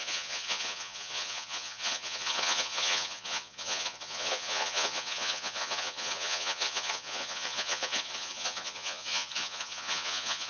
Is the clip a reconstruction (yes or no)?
yes